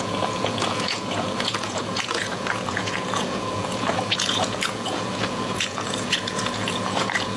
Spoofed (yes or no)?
yes